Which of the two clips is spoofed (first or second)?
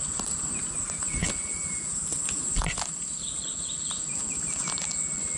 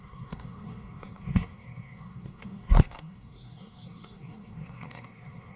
second